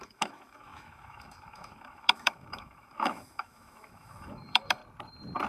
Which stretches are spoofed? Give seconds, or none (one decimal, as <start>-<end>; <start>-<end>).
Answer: 0.0-4.8